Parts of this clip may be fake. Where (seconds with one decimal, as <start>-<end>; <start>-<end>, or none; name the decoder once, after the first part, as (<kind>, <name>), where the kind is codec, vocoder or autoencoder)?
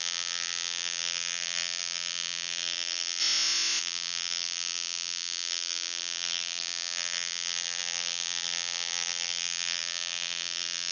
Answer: 0.0-3.2 (vocoder, BigVGAN v2); 3.8-10.9